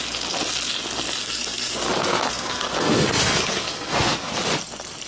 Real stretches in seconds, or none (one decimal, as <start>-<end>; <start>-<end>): 0.0-1.2; 4.3-5.1